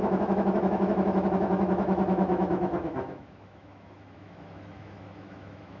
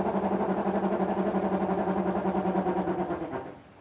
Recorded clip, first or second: second